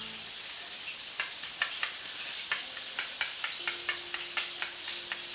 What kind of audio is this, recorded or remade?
recorded